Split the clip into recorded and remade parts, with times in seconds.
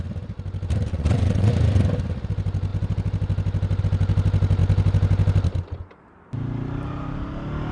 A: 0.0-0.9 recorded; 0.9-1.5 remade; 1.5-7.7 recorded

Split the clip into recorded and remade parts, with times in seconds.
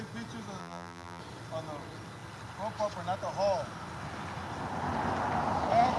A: 0.0-0.6 recorded; 0.6-1.2 remade; 1.2-6.0 recorded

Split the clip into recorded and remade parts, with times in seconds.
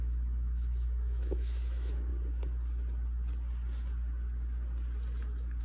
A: 0.0-2.1 remade; 2.1-5.6 recorded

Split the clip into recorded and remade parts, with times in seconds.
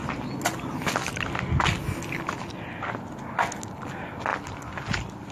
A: 0.0-5.3 recorded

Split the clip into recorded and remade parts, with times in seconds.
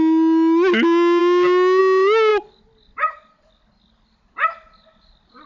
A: 0.0-5.5 recorded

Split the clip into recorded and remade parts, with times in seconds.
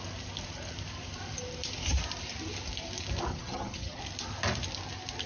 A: 0.0-3.3 recorded; 3.3-4.0 remade; 4.0-5.3 recorded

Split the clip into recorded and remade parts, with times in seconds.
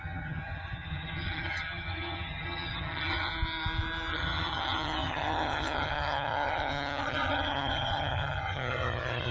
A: 0.0-3.3 remade; 3.3-4.1 recorded; 4.1-9.3 remade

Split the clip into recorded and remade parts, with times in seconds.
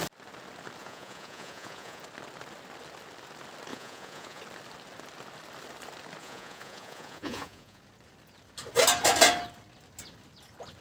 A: 0.0-0.8 recorded; 0.8-2.0 remade; 2.0-3.7 recorded; 3.7-4.4 remade; 4.4-6.2 recorded; 6.2-7.8 remade; 7.8-10.8 recorded